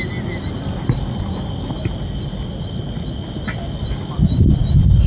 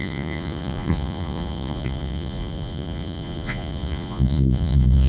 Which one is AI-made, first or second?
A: second